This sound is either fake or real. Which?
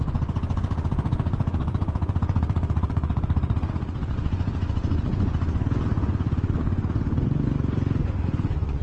fake